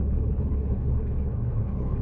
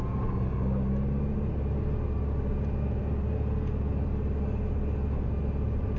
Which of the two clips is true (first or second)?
second